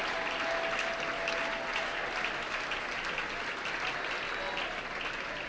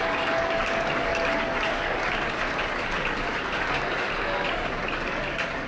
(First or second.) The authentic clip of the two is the first